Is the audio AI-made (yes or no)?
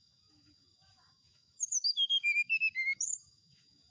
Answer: yes